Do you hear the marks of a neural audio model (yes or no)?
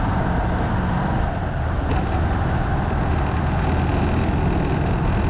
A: no